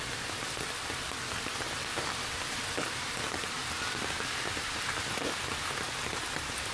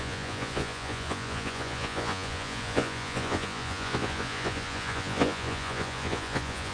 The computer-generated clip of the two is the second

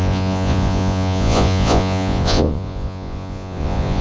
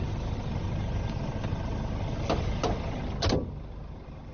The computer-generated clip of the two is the first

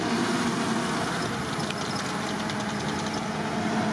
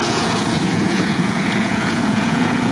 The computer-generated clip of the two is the second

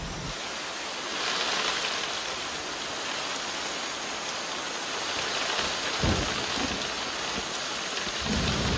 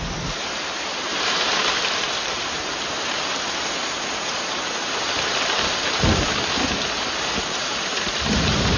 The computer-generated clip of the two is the second